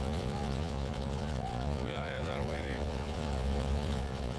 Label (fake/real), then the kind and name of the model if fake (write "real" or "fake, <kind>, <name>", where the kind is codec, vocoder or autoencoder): fake, vocoder, Vocos